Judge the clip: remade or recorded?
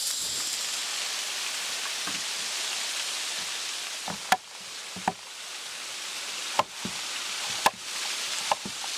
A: recorded